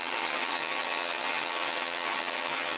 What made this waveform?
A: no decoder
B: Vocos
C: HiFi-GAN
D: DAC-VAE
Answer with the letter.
C